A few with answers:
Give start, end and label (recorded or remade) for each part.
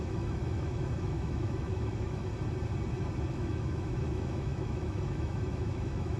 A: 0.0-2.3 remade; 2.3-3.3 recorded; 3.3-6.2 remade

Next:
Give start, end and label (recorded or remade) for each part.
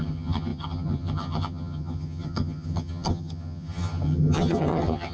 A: 0.0-5.1 remade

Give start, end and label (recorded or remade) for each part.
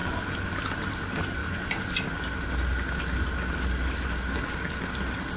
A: 0.0-5.4 recorded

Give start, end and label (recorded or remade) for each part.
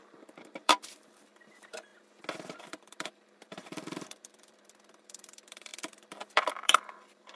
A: 0.0-1.9 remade; 1.9-2.6 recorded; 2.6-7.4 remade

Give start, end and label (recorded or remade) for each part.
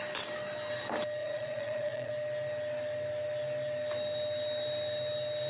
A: 0.0-1.2 recorded; 1.2-2.1 remade; 2.1-5.5 recorded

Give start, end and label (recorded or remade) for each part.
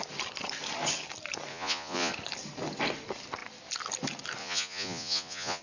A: 0.0-1.5 recorded; 1.5-2.1 remade; 2.1-4.4 recorded; 4.4-5.6 remade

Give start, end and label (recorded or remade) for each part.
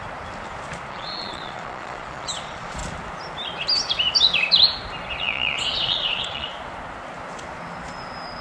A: 0.0-0.9 recorded; 0.9-2.8 remade; 2.8-5.2 recorded; 5.2-6.5 remade; 6.5-8.4 recorded